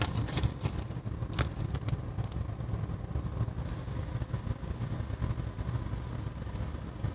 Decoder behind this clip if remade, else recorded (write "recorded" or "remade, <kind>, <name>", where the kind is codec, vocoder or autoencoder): recorded